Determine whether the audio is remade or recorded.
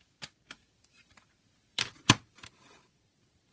recorded